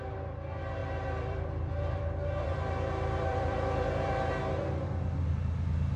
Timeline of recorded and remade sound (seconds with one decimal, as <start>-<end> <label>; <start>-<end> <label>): 0.0-0.8 recorded; 0.8-4.3 remade; 4.3-6.0 recorded